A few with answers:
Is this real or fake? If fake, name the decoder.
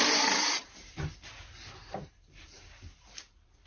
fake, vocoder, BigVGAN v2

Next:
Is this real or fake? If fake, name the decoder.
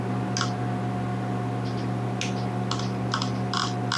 real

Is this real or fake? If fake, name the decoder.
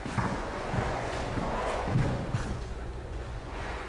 fake, vocoder, Vocos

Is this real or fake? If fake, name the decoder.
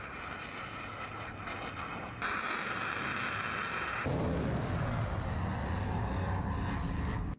real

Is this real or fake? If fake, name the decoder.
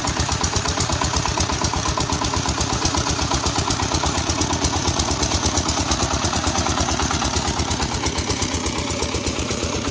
fake, vocoder, Vocos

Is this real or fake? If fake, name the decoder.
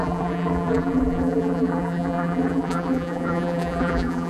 fake, vocoder, BigVGAN v2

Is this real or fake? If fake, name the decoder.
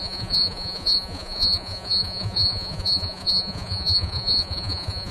fake, vocoder, Vocos